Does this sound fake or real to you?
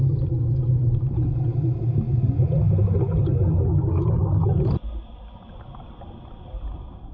real